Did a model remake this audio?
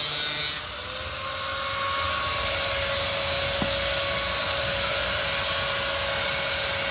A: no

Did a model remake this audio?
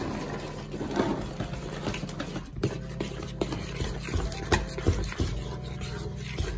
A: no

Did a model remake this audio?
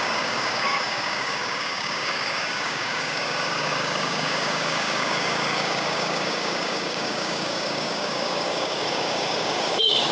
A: yes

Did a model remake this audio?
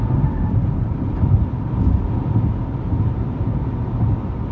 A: yes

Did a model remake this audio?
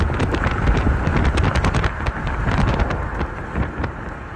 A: no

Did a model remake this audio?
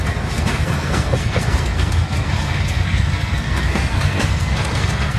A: yes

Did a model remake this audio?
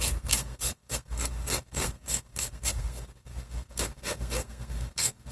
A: yes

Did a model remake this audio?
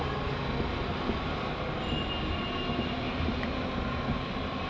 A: no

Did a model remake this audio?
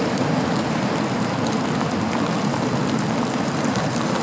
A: no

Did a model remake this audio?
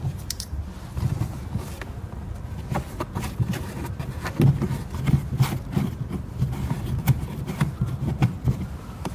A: no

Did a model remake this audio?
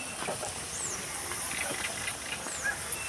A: no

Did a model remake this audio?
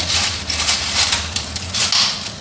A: no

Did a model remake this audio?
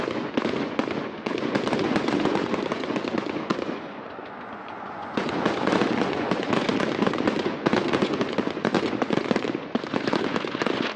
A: yes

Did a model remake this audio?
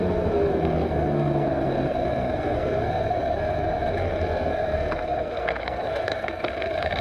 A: yes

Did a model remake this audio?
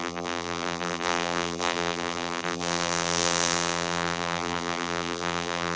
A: yes